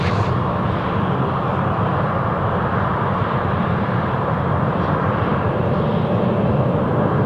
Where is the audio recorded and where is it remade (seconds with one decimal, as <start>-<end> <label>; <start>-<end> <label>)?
0.0-7.3 remade